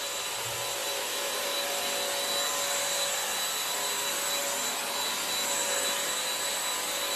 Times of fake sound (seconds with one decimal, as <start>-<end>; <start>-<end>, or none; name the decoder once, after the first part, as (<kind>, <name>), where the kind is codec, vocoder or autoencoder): 0.8-1.9 (vocoder, BigVGAN v2)